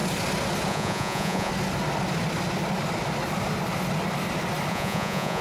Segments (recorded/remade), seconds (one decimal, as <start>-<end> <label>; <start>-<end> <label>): 0.0-0.7 recorded; 0.7-1.5 remade; 1.5-4.7 recorded; 4.7-5.4 remade